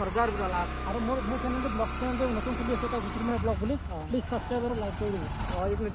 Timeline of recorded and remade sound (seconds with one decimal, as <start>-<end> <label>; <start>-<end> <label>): 0.0-0.6 recorded; 0.6-1.2 remade; 1.2-3.3 recorded; 3.3-4.7 remade; 4.7-5.9 recorded